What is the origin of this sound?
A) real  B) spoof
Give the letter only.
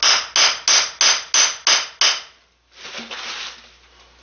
A